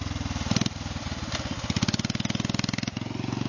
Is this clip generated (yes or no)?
no